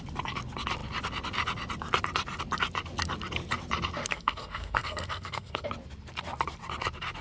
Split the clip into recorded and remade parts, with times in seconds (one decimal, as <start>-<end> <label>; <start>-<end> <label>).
0.0-4.0 recorded; 4.0-5.7 remade; 5.7-7.2 recorded